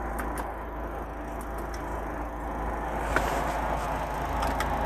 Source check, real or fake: real